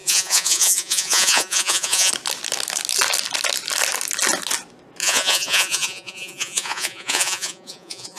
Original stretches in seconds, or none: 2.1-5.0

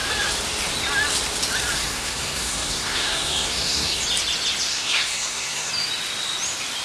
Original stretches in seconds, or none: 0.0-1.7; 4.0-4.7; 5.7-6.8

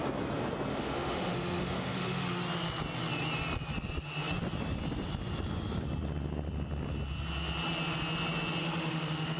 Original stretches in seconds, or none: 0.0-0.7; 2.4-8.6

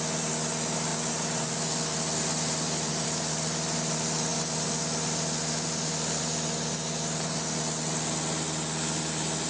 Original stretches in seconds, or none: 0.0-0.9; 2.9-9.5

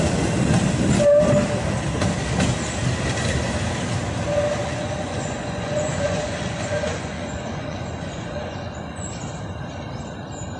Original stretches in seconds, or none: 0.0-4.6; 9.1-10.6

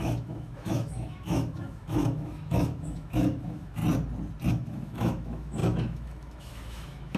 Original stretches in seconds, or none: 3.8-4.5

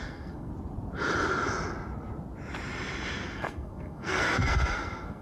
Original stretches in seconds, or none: 0.5-3.3

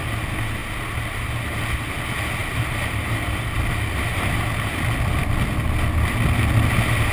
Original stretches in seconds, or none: 0.0-2.4; 4.3-7.1